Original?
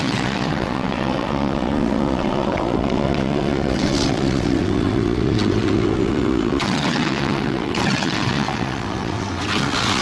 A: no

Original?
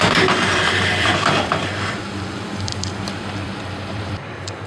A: no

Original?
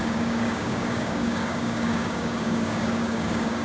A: no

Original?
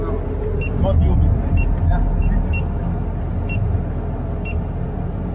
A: yes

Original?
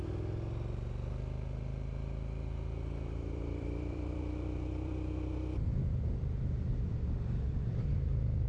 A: no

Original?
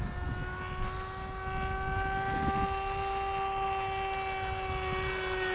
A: yes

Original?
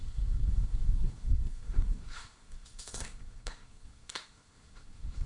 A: no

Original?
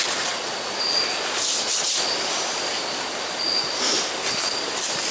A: yes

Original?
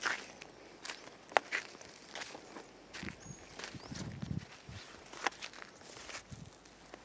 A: yes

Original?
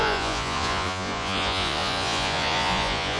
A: no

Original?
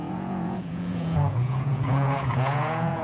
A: no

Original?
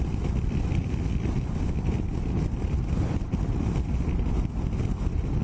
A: yes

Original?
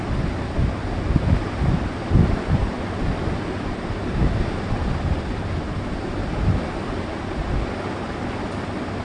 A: yes